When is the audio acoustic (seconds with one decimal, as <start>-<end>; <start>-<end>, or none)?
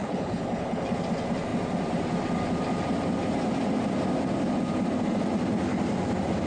0.9-6.5